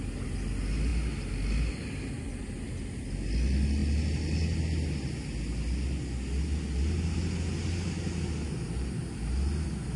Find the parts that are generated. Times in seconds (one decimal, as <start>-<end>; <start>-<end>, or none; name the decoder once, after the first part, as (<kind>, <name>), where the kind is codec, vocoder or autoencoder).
none